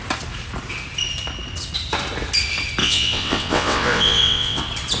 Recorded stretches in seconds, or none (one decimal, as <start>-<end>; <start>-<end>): 0.0-2.8; 4.6-5.0